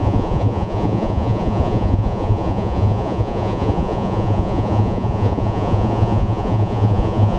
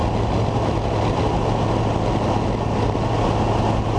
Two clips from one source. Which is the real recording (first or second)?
second